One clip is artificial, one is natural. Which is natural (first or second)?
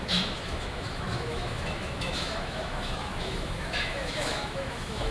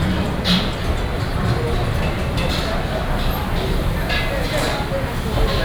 second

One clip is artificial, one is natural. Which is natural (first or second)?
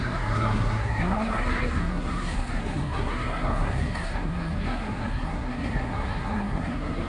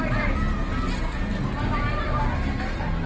second